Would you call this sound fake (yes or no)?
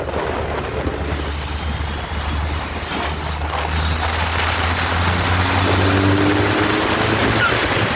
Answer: no